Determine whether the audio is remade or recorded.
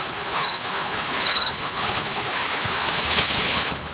remade